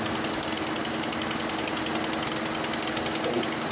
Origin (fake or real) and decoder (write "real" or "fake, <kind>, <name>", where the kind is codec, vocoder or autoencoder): real